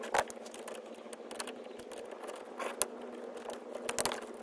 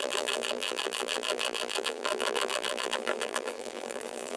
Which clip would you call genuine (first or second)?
first